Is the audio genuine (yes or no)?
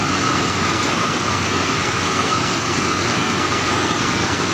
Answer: no